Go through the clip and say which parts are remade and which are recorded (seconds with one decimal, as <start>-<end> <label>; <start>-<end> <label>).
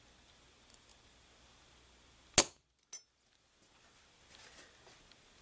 0.0-5.4 recorded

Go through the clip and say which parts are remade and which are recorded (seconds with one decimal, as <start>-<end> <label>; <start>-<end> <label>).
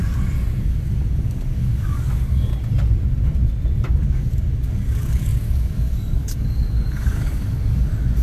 0.0-0.6 recorded; 0.6-2.5 remade; 2.5-3.9 recorded; 3.9-8.2 remade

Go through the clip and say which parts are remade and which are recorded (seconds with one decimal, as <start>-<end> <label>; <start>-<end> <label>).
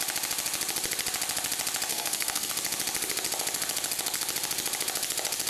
0.0-1.9 recorded; 1.9-2.5 remade; 2.5-5.5 recorded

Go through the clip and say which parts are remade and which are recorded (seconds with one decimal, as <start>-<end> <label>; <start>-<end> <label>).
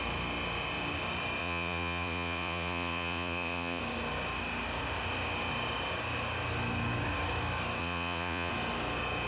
0.0-1.4 recorded; 1.4-3.8 remade; 3.8-7.8 recorded; 7.8-8.5 remade; 8.5-9.3 recorded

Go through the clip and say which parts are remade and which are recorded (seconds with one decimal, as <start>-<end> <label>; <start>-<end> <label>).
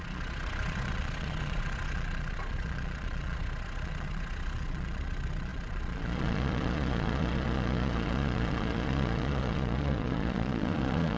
0.0-11.2 remade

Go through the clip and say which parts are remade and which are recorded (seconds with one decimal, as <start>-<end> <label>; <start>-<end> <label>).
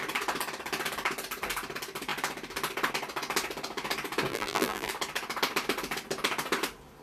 0.0-4.3 recorded; 4.3-4.9 remade; 4.9-7.0 recorded